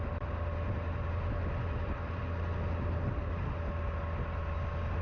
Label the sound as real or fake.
real